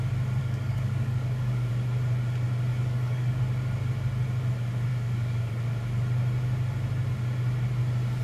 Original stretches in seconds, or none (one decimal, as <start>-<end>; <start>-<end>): 0.0-0.4; 1.7-2.7; 3.4-4.9; 5.5-8.2